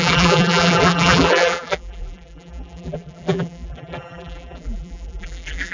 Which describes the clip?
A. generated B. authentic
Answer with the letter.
A